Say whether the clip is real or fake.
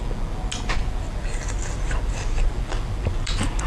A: real